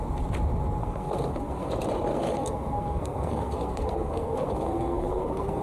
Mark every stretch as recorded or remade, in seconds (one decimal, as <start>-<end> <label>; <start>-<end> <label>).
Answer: 0.0-0.8 recorded; 0.8-1.7 remade; 1.7-2.1 recorded; 2.1-5.6 remade